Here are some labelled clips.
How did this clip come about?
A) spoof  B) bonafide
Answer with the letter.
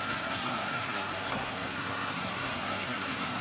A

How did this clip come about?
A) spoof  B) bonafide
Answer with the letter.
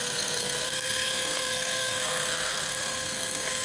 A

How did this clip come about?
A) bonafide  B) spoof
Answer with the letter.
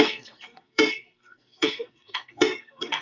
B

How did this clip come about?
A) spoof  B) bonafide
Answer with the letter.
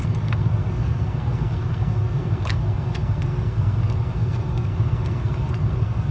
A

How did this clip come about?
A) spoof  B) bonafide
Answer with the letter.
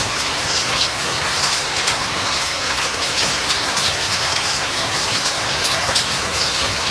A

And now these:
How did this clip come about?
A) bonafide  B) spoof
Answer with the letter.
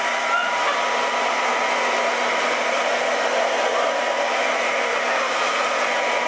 A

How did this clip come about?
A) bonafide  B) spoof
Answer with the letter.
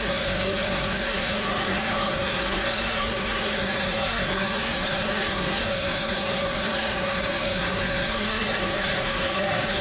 B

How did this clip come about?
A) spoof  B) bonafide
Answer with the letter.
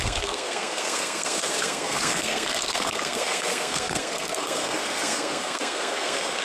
A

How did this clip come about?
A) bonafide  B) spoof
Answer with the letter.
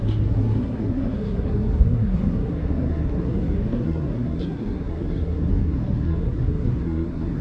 B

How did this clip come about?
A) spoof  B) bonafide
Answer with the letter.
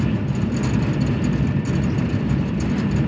B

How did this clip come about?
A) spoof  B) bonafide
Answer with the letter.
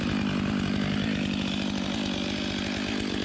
B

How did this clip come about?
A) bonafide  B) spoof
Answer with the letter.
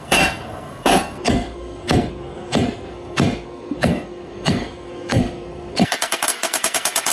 B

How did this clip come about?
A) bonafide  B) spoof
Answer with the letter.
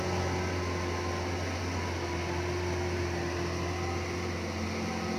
A